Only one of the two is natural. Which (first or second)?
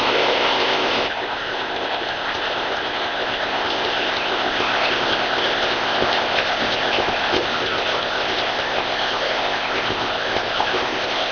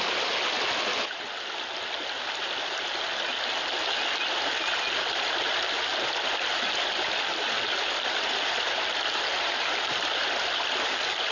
second